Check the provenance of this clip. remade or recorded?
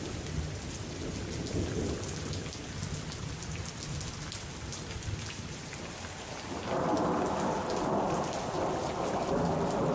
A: recorded